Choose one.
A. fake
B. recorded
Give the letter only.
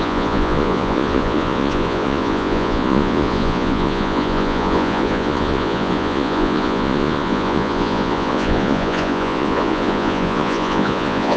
A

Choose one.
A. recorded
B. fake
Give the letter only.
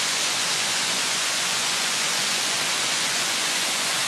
B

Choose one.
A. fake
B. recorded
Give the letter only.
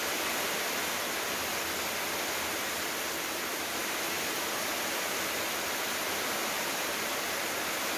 B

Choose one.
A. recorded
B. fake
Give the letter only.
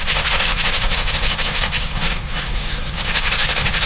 B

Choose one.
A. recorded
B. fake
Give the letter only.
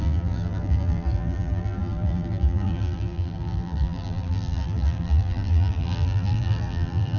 B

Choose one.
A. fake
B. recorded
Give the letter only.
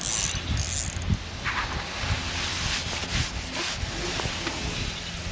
B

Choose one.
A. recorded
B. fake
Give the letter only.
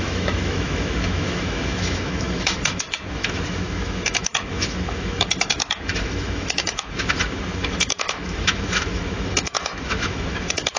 B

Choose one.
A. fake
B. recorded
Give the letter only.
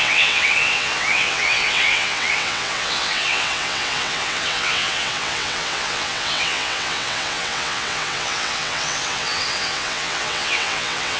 A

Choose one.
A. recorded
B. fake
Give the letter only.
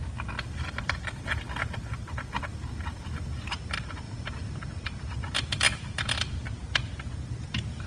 A